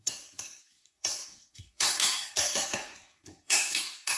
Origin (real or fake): fake